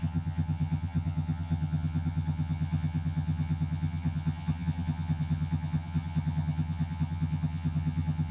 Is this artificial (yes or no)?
yes